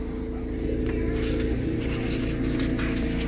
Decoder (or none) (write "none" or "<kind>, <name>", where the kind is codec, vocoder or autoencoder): none